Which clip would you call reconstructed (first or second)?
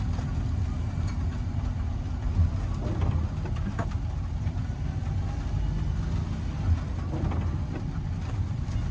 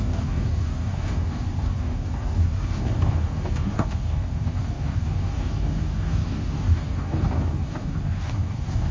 second